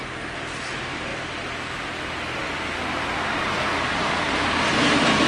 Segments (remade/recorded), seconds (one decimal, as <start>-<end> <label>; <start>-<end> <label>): 0.0-5.3 recorded